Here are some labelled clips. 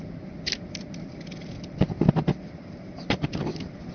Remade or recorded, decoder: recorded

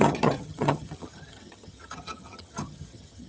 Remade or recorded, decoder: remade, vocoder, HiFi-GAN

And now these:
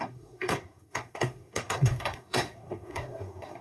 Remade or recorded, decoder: remade, codec, SNAC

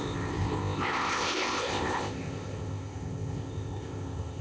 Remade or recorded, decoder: remade, codec, ZipCodec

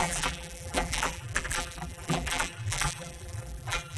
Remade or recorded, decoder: remade, vocoder, BigVGAN v2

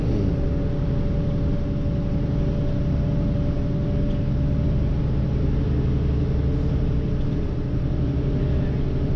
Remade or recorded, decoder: recorded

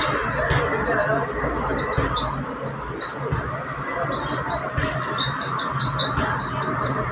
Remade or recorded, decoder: recorded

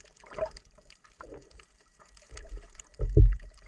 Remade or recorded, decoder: remade, vocoder, BigVGAN v2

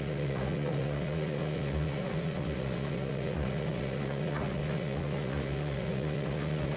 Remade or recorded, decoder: remade, vocoder, Vocos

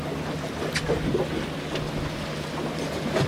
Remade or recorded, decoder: recorded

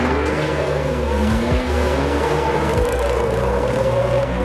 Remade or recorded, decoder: remade, codec, SNAC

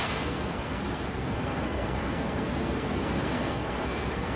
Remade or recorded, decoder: remade, codec, SNAC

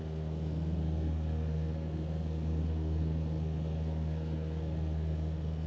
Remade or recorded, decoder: remade, codec, SNAC